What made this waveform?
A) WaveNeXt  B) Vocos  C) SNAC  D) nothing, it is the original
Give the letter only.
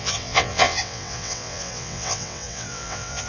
A